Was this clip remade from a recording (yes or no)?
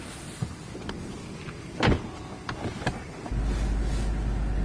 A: no